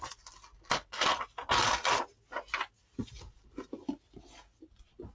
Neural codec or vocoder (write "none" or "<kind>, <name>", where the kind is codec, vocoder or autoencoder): none